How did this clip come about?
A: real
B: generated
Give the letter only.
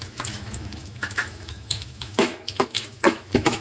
B